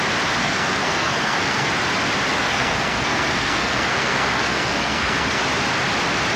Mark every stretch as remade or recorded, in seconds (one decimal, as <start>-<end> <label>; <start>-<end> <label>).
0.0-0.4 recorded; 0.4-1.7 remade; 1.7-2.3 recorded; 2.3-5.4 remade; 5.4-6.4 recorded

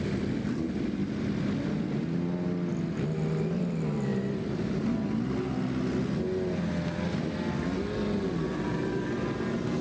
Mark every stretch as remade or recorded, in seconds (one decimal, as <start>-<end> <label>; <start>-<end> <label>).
0.0-9.8 recorded

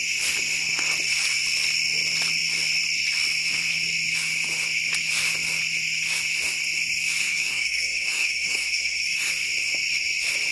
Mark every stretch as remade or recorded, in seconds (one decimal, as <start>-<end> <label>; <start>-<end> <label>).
0.0-7.2 recorded; 7.2-9.3 remade; 9.3-10.5 recorded

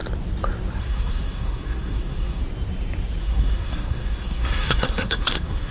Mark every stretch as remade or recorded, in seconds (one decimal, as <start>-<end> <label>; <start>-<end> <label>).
0.0-0.8 recorded; 0.8-2.4 remade; 2.4-3.2 recorded; 3.2-5.7 remade

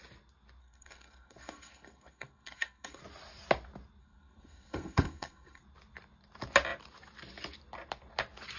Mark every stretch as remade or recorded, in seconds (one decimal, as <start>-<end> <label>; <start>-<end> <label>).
0.0-0.6 recorded; 0.6-3.0 remade; 3.0-4.0 recorded; 4.0-5.6 remade; 5.6-8.6 recorded

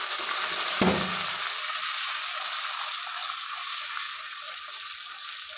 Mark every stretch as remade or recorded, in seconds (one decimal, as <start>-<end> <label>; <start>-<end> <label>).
0.0-5.6 recorded

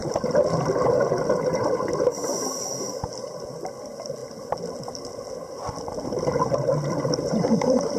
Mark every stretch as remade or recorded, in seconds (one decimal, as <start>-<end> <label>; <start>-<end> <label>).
0.0-8.0 recorded